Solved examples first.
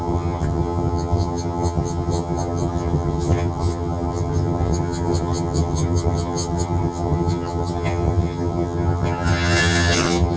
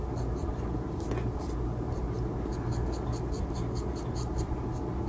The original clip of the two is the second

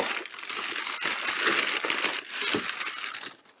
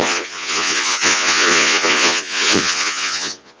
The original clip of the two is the first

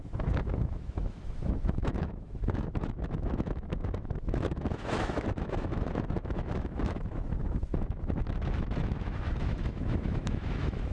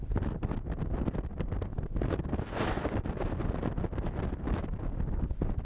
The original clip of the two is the second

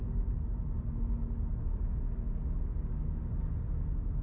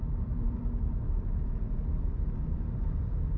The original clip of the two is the first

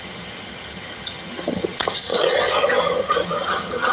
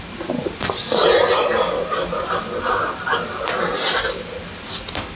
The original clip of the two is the second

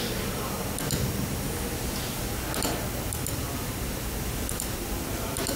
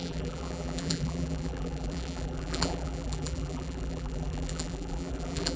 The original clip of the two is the first